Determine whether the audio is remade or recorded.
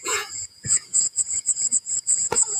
remade